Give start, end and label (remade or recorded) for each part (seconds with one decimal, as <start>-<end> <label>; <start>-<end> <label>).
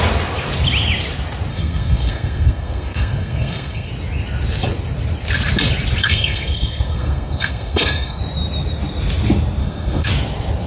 0.0-1.5 recorded; 1.5-3.9 remade; 3.9-6.0 recorded; 6.0-8.2 remade; 8.2-9.6 recorded; 9.6-10.1 remade; 10.1-10.7 recorded